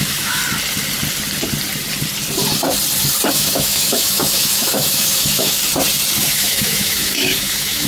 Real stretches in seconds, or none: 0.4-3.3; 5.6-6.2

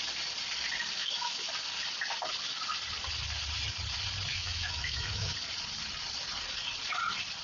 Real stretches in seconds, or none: 0.0-1.0; 1.5-4.3; 5.3-7.4

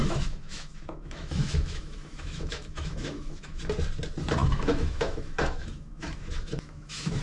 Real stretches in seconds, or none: 3.6-4.4

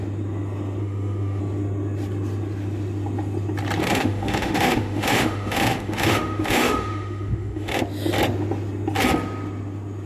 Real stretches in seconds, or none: 0.0-0.8; 1.4-3.8; 7.8-10.1

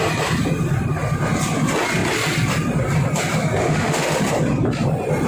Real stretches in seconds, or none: 0.0-3.6; 4.2-5.3

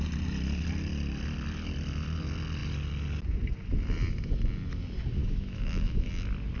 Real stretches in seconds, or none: 0.0-5.2; 6.1-6.6

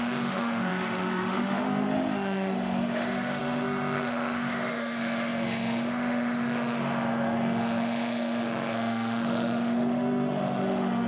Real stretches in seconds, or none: none